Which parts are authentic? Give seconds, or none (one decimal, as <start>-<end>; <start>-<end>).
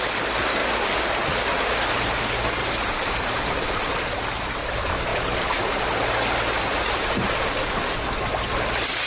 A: 0.0-2.6; 4.2-5.1; 6.0-9.1